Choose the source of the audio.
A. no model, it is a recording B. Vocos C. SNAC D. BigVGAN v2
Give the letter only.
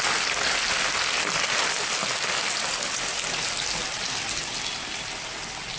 A